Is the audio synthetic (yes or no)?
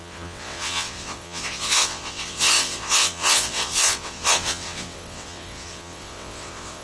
yes